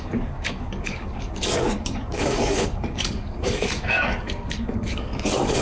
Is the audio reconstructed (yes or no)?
yes